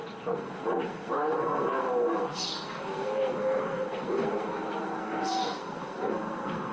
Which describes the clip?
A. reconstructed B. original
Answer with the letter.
A